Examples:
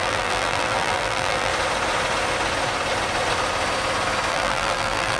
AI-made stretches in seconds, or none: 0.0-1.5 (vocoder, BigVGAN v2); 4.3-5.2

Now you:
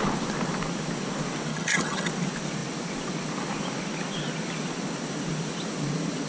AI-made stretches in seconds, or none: 1.5-2.1 (vocoder, HiFi-GAN)

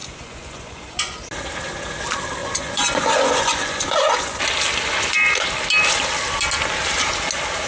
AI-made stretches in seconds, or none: 0.0-1.2 (vocoder, Vocos); 2.4-4.4

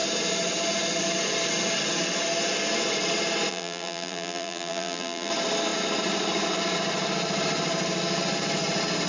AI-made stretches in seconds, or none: 3.5-5.3 (vocoder, BigVGAN v2)

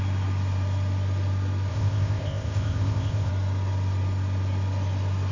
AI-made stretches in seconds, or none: 1.7-3.3 (codec, ZipCodec)